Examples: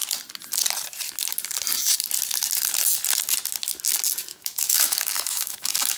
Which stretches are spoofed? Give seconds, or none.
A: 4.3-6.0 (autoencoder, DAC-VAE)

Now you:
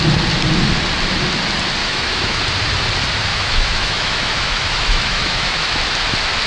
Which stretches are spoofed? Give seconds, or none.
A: 1.8-2.4 (autoencoder, DAC-VAE); 3.3-5.8

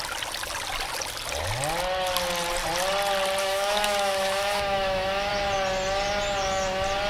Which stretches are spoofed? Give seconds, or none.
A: 3.4-5.3 (autoencoder, DAC-VAE)

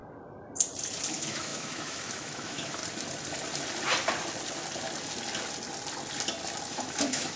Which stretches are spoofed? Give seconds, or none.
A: 1.1-2.8 (autoencoder, DAC-VAE); 6.7-7.4

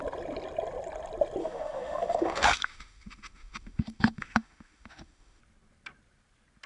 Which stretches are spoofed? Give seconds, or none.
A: 1.4-5.4 (autoencoder, DAC-VAE)

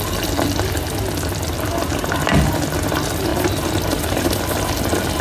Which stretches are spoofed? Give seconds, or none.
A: none

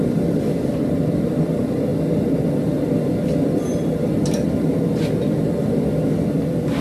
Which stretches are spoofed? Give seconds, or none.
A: none